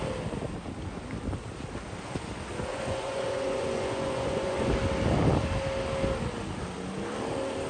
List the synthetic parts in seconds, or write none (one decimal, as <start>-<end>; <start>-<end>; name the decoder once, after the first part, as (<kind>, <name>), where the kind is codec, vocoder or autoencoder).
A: 2.7-4.7 (vocoder, Vocos)